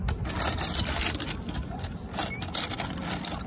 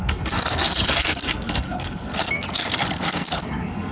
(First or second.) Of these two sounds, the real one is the first